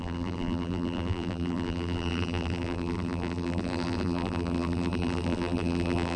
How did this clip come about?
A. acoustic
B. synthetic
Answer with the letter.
B